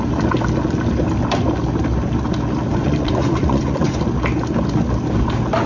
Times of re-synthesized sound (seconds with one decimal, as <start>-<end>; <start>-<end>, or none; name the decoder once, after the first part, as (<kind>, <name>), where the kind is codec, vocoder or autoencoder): 2.7-4.0 (vocoder, Vocos)